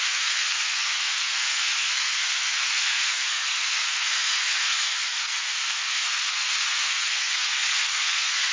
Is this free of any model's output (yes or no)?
no